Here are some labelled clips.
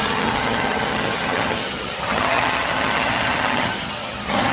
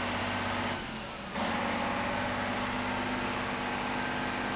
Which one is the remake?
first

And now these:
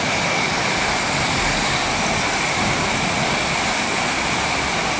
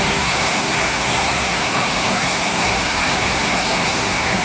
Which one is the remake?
second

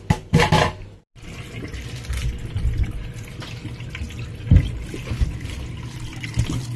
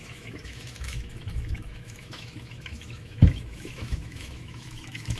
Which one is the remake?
second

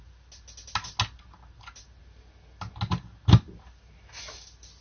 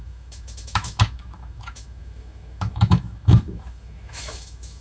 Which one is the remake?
second